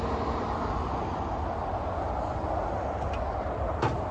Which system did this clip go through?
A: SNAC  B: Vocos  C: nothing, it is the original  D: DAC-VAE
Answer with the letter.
C